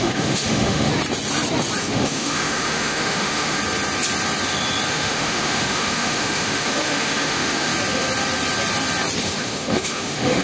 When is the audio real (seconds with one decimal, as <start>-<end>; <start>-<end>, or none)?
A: 0.9-1.8; 3.6-4.9; 7.7-9.2